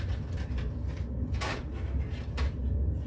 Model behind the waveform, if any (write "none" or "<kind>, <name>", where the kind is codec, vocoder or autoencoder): none